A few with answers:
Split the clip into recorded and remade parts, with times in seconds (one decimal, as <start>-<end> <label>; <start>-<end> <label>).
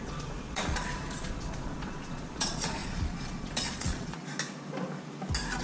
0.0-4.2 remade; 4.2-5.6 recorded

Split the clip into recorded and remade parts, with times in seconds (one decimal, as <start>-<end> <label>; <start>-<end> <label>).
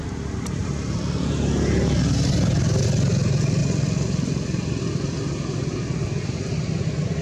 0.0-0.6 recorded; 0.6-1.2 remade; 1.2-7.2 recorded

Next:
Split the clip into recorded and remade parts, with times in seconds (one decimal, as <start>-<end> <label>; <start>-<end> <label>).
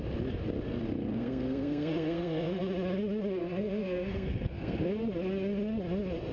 0.0-1.1 recorded; 1.1-2.6 remade; 2.6-3.4 recorded; 3.4-4.9 remade; 4.9-6.3 recorded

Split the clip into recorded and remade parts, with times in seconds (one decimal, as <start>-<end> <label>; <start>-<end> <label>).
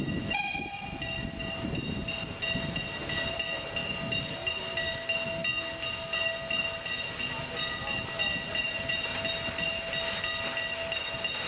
0.0-11.5 recorded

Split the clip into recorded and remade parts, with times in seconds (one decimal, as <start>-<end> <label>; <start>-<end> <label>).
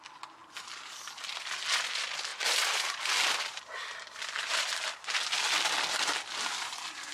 0.0-2.3 recorded; 2.3-3.4 remade; 3.4-7.1 recorded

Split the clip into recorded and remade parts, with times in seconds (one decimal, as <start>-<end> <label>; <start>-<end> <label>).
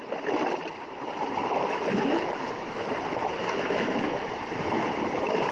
0.0-1.4 recorded; 1.4-2.9 remade; 2.9-3.4 recorded; 3.4-4.3 remade; 4.3-5.5 recorded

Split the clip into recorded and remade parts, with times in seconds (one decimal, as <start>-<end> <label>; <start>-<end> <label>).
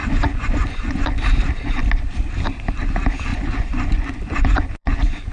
0.0-1.1 remade; 1.1-3.3 recorded; 3.3-5.3 remade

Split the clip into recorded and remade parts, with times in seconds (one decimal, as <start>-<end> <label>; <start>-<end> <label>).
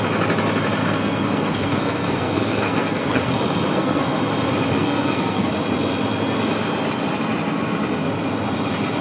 0.0-0.8 recorded; 0.8-3.3 remade; 3.3-3.7 recorded; 3.7-4.2 remade; 4.2-4.7 recorded; 4.7-5.5 remade; 5.5-9.0 recorded